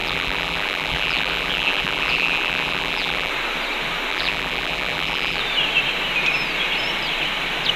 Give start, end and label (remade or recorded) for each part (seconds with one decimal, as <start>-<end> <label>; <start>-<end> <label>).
0.0-3.3 remade; 3.3-4.1 recorded; 4.1-5.4 remade; 5.4-7.8 recorded